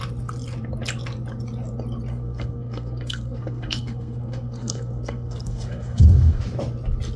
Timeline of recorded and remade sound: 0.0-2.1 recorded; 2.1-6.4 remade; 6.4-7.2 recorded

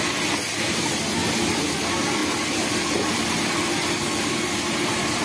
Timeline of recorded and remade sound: 0.0-1.2 remade; 1.2-1.8 recorded; 1.8-5.2 remade

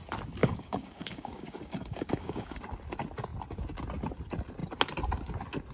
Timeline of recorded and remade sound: 0.0-0.4 recorded; 0.4-2.6 remade; 2.6-5.7 recorded

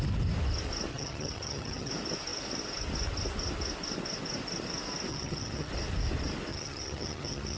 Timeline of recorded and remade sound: 0.0-0.9 recorded; 0.9-1.9 remade; 1.9-5.1 recorded; 5.1-5.7 remade; 5.7-6.5 recorded; 6.5-7.6 remade

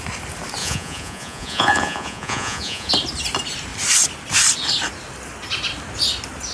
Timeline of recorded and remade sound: 0.0-0.6 recorded; 0.6-2.9 remade; 2.9-6.5 recorded